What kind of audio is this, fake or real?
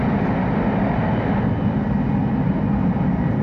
real